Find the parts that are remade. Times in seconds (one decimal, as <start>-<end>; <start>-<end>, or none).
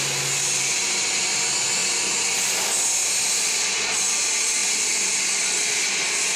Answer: none